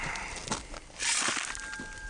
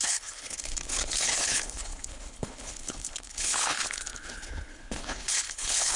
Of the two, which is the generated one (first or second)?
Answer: second